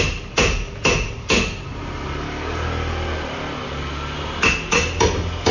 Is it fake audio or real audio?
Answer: real